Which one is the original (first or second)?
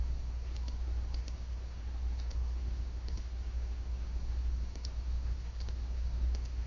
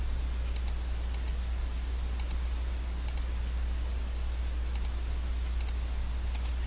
second